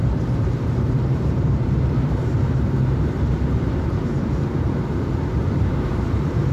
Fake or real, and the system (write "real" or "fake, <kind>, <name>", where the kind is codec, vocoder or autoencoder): fake, vocoder, BigVGAN v2